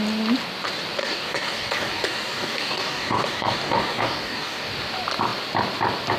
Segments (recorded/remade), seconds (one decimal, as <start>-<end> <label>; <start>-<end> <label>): 0.0-1.0 recorded; 1.0-4.7 remade; 4.7-6.2 recorded